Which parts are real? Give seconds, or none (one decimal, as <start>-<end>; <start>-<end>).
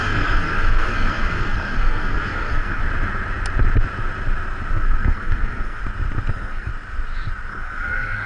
2.8-4.7; 5.8-6.3; 6.7-7.5